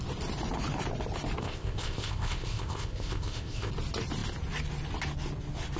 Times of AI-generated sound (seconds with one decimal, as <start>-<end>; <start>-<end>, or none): 1.4-3.7